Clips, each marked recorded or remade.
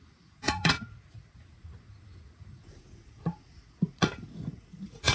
remade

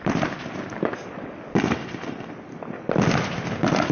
recorded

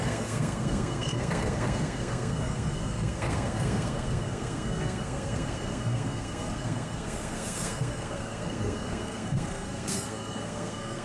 remade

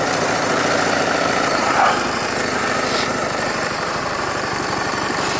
remade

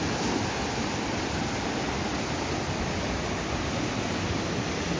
recorded